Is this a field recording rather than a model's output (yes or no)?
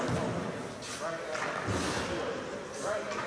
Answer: yes